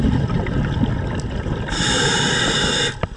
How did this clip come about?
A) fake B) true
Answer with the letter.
B